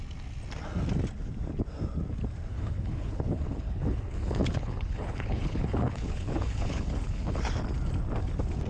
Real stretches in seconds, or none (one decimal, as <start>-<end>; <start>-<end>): 0.0-2.5; 7.4-8.7